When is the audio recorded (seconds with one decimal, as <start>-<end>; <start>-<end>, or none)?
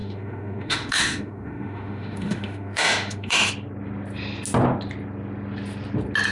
3.5-6.3